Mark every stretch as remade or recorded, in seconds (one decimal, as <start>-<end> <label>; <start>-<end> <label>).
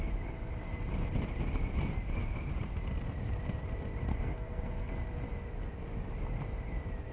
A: 0.0-4.1 recorded; 4.1-4.9 remade; 4.9-7.1 recorded